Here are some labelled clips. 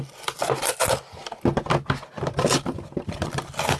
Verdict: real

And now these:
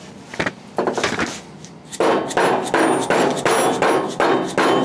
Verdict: real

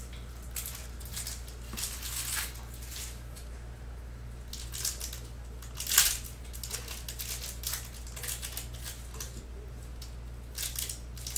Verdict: real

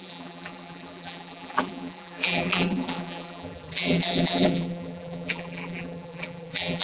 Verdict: fake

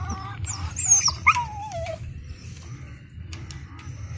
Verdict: real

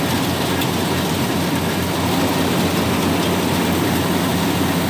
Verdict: real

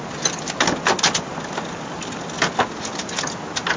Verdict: real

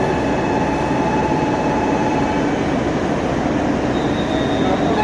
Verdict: real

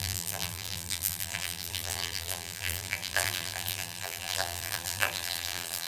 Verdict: fake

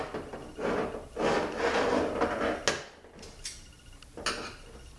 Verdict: real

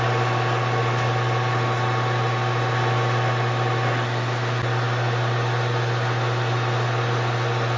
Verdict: real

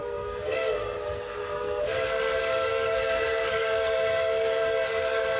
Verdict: fake